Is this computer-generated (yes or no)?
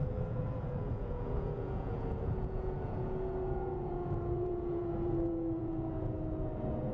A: yes